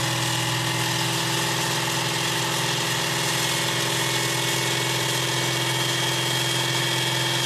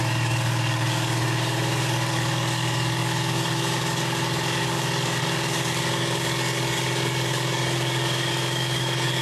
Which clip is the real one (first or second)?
first